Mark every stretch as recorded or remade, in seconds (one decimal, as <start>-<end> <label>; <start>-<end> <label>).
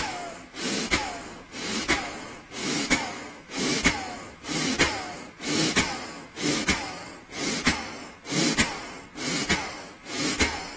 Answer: 0.0-7.0 remade; 7.0-9.8 recorded; 9.8-10.8 remade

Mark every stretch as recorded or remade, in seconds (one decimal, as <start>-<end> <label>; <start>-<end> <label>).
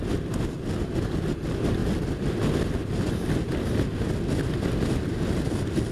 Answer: 0.0-5.9 recorded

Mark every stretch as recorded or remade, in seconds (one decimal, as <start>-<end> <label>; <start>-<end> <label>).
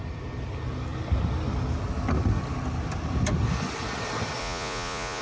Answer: 0.0-4.4 recorded; 4.4-5.2 remade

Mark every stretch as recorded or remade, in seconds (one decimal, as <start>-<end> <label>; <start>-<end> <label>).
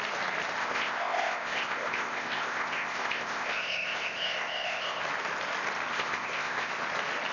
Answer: 0.0-0.6 recorded; 0.6-5.0 remade; 5.0-5.9 recorded; 5.9-6.7 remade; 6.7-7.3 recorded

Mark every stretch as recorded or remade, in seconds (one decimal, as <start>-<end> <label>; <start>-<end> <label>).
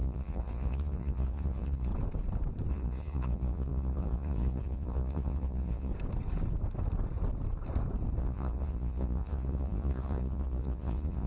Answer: 0.0-1.9 remade; 1.9-2.7 recorded; 2.7-5.9 remade; 5.9-8.2 recorded; 8.2-11.3 remade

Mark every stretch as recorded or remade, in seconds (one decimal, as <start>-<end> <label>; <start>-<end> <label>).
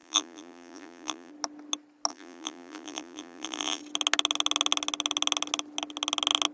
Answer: 0.0-1.3 remade; 1.3-2.1 recorded; 2.1-3.8 remade; 3.8-6.5 recorded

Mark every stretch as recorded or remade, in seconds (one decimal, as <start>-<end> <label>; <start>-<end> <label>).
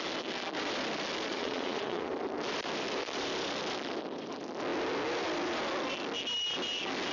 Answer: 0.0-1.3 recorded; 1.3-2.1 remade; 2.1-7.1 recorded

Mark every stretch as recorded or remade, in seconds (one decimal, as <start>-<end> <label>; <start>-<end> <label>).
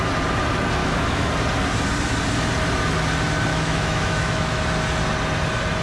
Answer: 0.0-0.8 recorded; 0.8-1.3 remade; 1.3-3.5 recorded; 3.5-4.6 remade; 4.6-5.8 recorded